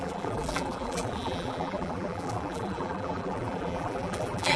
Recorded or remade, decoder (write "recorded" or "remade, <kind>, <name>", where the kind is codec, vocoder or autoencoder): remade, vocoder, BigVGAN v2